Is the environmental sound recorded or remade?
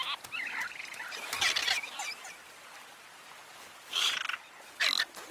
recorded